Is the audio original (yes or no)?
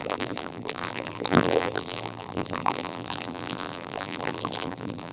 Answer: no